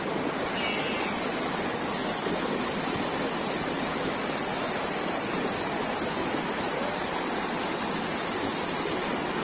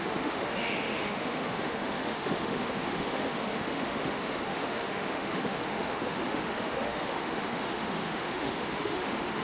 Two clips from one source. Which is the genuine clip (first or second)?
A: first